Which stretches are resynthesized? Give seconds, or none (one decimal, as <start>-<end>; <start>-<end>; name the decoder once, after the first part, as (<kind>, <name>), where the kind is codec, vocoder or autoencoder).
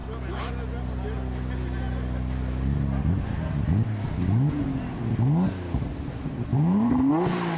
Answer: 6.5-7.1 (vocoder, BigVGAN v2)